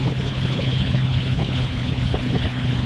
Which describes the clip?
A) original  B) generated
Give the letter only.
B